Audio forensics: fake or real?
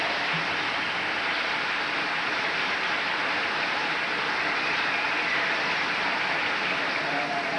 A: real